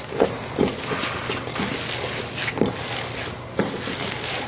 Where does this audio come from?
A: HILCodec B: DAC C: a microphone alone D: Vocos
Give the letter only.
C